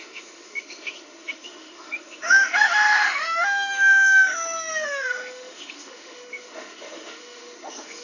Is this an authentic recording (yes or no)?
no